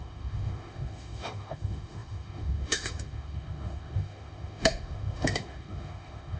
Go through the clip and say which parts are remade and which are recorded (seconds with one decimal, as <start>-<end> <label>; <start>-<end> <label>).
0.0-6.4 remade

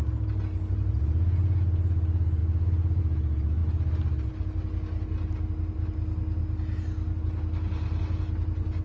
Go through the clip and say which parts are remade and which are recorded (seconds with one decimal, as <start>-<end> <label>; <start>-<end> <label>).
0.0-2.4 recorded; 2.4-3.0 remade; 3.0-8.8 recorded

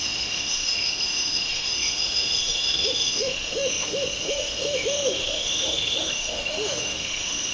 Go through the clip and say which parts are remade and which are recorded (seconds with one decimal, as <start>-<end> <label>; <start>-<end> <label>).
0.0-7.5 remade

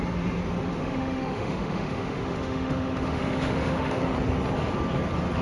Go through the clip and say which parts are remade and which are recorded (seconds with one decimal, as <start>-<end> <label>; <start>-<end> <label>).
0.0-0.8 recorded; 0.8-4.0 remade; 4.0-5.4 recorded

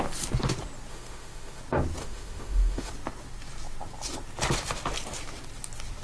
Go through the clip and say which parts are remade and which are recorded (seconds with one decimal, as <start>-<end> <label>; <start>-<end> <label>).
0.0-0.9 recorded; 0.9-1.6 remade; 1.6-2.0 recorded; 2.0-2.9 remade; 2.9-6.0 recorded